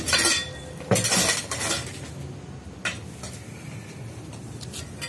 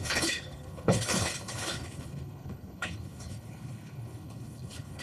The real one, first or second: first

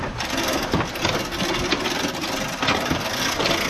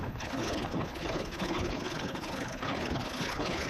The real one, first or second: first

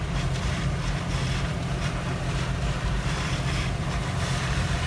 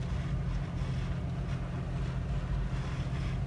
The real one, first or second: second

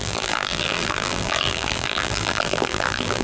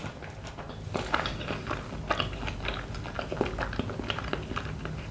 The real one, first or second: second